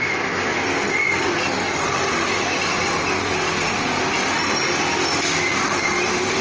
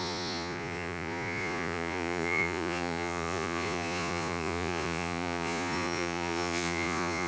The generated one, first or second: second